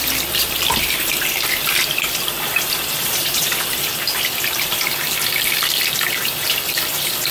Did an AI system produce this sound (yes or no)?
yes